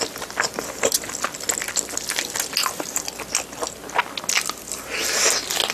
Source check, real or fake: real